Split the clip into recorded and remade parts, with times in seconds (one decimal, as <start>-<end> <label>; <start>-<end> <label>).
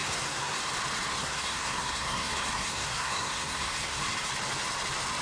0.0-0.6 remade; 0.6-1.2 recorded; 1.2-4.3 remade; 4.3-5.2 recorded